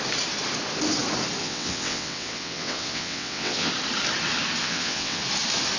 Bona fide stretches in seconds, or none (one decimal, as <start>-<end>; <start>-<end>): 0.0-1.4; 3.7-4.6; 5.2-5.8